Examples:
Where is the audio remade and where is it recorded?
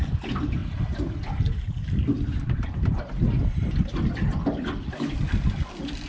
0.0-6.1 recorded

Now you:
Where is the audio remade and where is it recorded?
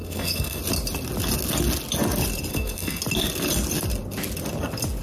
0.0-0.6 remade; 0.6-2.5 recorded; 2.5-3.0 remade; 3.0-5.0 recorded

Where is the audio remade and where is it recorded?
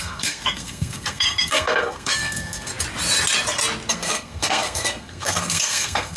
0.0-2.7 remade; 2.7-3.9 recorded; 3.9-6.2 remade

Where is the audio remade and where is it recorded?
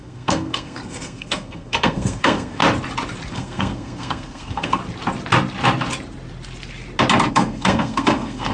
0.0-2.6 remade; 2.6-3.3 recorded; 3.3-4.8 remade; 4.8-7.3 recorded; 7.3-8.5 remade